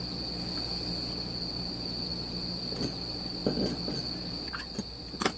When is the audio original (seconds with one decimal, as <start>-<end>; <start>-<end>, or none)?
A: 0.0-5.4